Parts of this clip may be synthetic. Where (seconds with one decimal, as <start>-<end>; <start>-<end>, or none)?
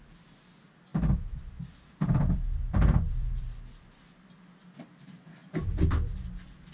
0.0-6.7